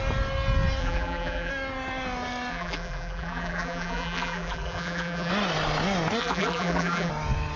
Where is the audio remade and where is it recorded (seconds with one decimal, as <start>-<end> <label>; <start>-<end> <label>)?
0.0-0.8 recorded; 0.8-1.5 remade; 1.5-2.5 recorded; 2.5-5.3 remade; 5.3-6.2 recorded; 6.2-7.1 remade; 7.1-7.6 recorded